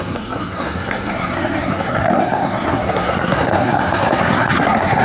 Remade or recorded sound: remade